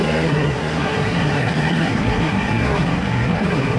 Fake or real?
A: fake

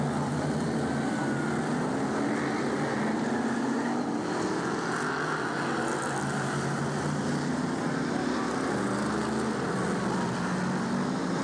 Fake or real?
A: real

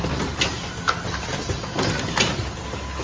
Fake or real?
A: real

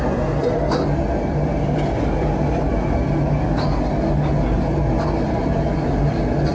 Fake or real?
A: real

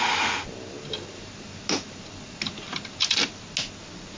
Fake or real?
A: real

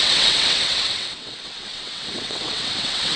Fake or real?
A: fake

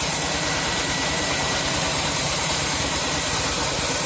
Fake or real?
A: fake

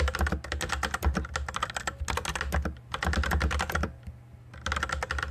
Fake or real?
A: real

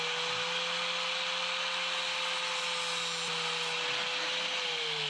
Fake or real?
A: real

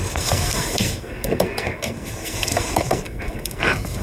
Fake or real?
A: fake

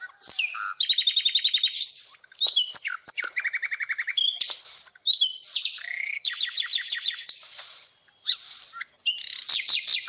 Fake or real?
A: fake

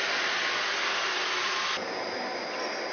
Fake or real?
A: real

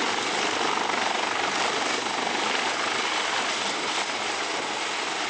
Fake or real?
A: real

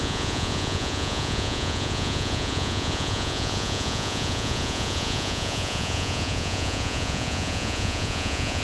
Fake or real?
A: fake